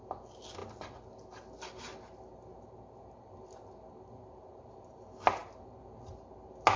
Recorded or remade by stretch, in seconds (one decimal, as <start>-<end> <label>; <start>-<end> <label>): 0.0-6.8 recorded